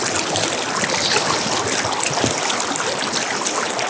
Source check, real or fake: real